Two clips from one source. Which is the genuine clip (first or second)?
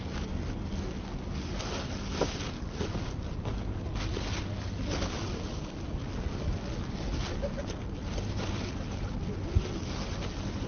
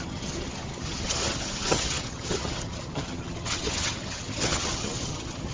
first